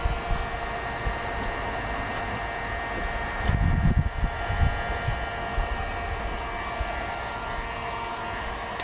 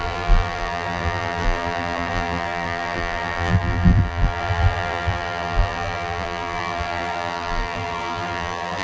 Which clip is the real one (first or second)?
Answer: first